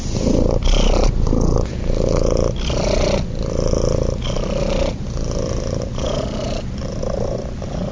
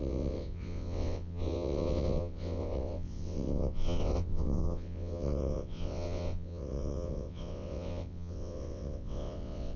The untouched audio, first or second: first